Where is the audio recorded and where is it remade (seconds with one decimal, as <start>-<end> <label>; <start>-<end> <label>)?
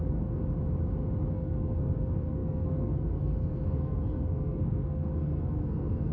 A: 0.0-0.4 remade; 0.4-1.3 recorded; 1.3-6.1 remade